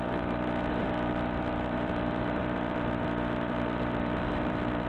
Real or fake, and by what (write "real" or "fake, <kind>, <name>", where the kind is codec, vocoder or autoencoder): fake, vocoder, BigVGAN v2